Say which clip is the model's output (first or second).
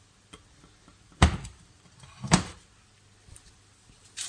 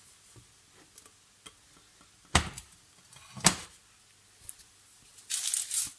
first